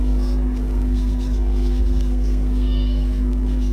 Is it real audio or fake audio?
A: fake